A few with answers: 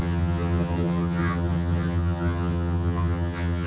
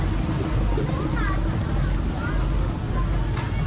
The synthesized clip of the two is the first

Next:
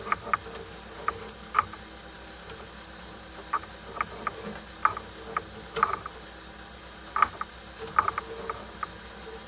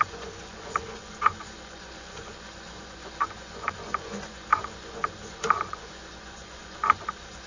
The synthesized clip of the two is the second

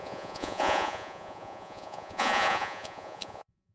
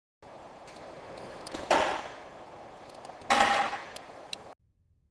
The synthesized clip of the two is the first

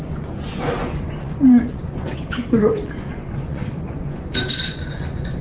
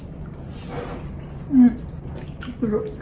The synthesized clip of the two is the first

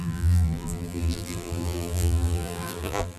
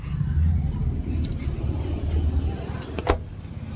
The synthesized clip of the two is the first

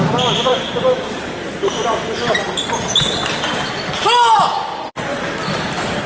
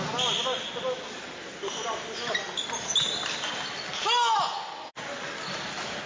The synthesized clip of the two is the first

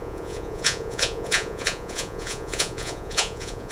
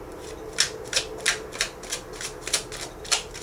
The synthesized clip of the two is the first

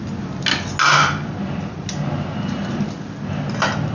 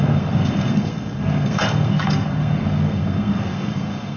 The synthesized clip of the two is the second